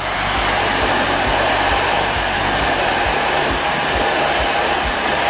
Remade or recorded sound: recorded